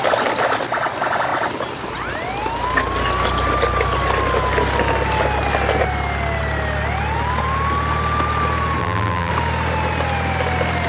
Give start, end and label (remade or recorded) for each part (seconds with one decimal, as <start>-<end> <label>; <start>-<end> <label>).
0.0-8.8 recorded; 8.8-9.3 remade; 9.3-10.9 recorded